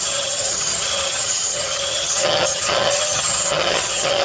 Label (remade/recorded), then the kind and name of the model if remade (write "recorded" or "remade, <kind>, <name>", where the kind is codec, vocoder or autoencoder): remade, vocoder, HiFi-GAN